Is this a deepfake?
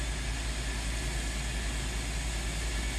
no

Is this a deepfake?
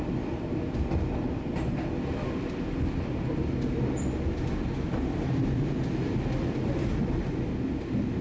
no